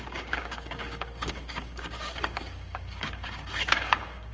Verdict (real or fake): fake